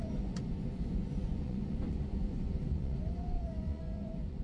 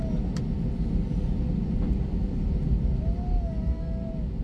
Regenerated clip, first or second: first